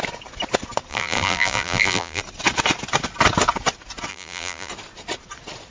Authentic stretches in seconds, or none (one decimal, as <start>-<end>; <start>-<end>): 0.0-0.9; 2.2-4.1; 4.7-5.7